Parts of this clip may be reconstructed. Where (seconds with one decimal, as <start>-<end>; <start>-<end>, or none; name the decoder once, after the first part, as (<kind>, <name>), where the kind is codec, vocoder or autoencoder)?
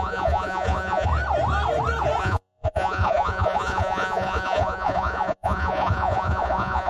0.0-1.1 (vocoder, Vocos); 2.2-6.9